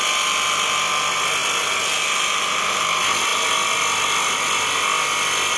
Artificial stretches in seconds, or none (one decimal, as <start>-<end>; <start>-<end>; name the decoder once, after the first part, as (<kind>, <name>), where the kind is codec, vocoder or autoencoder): none